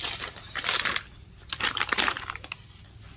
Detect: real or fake fake